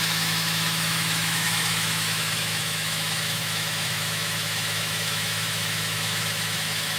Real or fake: fake